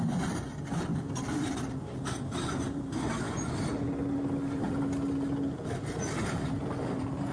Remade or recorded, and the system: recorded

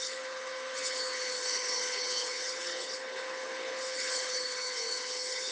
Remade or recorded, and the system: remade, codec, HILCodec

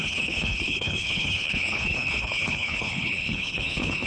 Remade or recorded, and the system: remade, codec, HILCodec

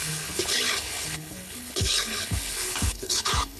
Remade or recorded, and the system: remade, codec, HILCodec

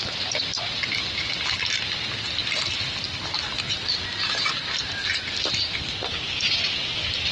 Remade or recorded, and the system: recorded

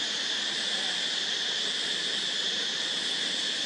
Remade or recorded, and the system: recorded